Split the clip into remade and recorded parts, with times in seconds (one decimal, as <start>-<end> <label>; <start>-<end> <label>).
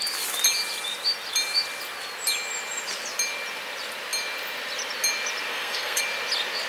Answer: 0.0-5.5 recorded; 5.5-6.0 remade; 6.0-6.7 recorded